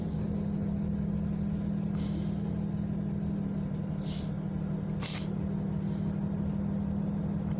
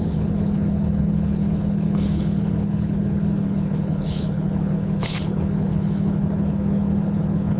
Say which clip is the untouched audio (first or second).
first